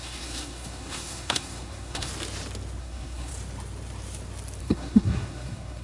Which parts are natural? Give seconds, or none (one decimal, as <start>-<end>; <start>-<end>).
2.1-2.8; 3.3-4.6